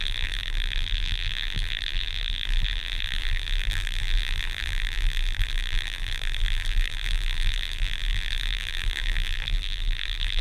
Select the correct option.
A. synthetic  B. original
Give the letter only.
A